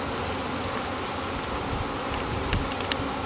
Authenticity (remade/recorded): recorded